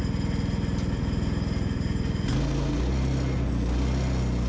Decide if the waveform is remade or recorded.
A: recorded